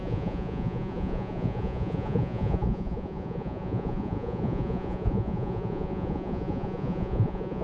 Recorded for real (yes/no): no